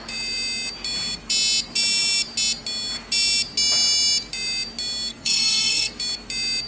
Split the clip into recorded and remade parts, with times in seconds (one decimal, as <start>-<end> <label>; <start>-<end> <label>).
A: 0.0-5.1 recorded; 5.1-5.9 remade; 5.9-6.7 recorded